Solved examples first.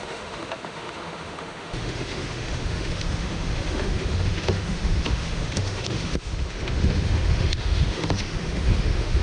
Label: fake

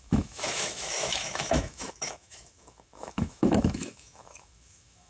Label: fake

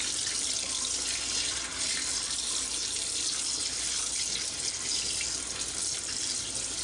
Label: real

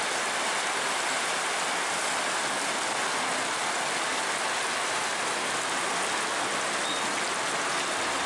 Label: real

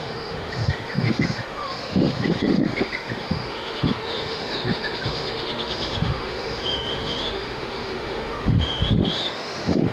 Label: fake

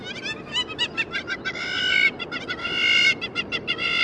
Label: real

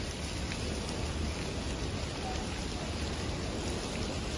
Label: real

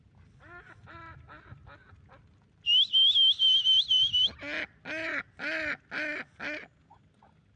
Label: real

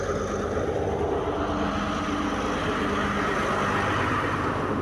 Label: real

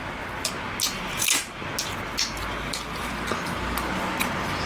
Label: real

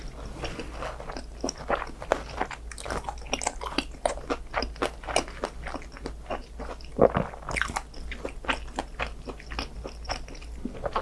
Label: real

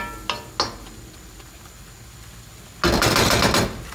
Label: real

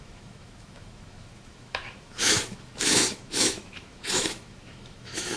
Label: fake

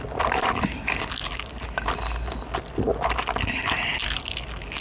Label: real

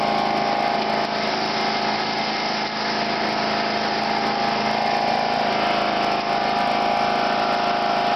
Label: real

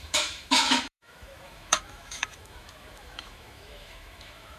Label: fake